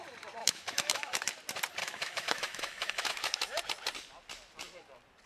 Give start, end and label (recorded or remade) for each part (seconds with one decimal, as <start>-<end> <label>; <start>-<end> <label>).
0.0-0.4 recorded; 0.4-1.3 remade; 1.3-1.8 recorded; 1.8-3.6 remade; 3.6-5.3 recorded